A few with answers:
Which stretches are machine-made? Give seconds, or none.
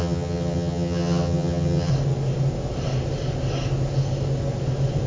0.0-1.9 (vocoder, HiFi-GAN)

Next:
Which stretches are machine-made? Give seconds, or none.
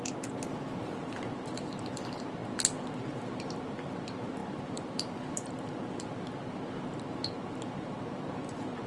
0.0-8.9 (vocoder, BigVGAN v2)